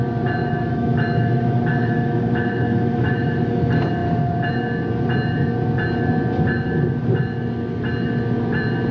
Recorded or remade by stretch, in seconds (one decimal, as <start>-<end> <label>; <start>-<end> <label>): 0.0-0.4 recorded; 0.4-3.6 remade; 3.6-8.9 recorded